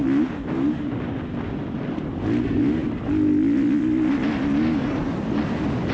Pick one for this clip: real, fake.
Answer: real